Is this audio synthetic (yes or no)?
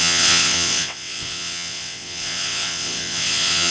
yes